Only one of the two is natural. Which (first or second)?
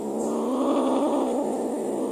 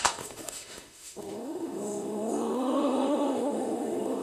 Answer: first